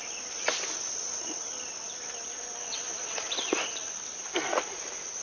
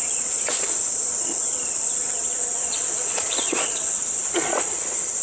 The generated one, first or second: second